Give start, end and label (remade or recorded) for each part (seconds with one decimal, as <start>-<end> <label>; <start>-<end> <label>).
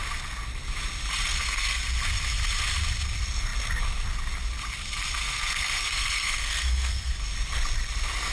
0.0-1.3 recorded; 1.3-1.8 remade; 1.8-5.2 recorded; 5.2-7.1 remade; 7.1-8.3 recorded